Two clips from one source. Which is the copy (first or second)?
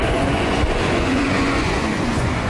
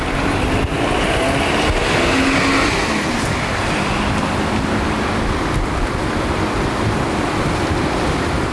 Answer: first